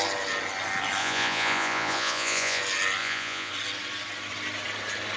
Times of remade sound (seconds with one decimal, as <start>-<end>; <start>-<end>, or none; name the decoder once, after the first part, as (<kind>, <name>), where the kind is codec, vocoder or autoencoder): 1.0-2.6 (vocoder, Vocos); 3.0-3.5